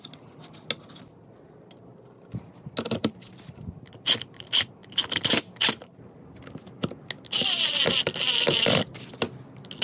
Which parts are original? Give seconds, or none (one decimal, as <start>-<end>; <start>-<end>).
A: 0.0-9.8